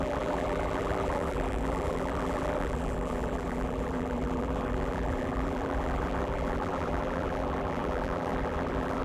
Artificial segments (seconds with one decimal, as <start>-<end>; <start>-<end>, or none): 0.0-9.0